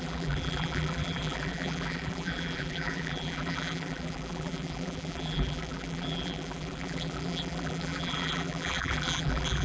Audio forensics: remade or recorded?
remade